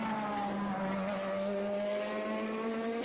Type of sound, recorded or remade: recorded